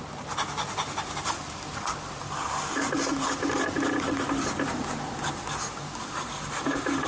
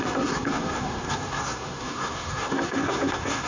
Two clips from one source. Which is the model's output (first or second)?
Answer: second